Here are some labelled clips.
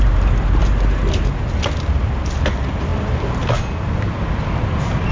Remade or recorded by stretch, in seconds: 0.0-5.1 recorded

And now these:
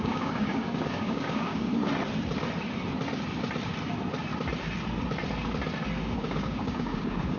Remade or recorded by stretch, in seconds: 0.0-1.7 remade; 1.7-6.0 recorded; 6.0-7.4 remade

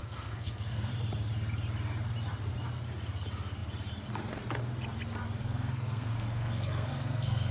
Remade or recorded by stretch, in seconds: 0.0-0.9 remade; 0.9-5.4 recorded; 5.4-7.5 remade

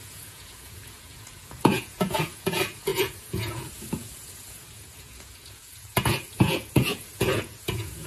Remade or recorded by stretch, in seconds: 0.0-8.1 remade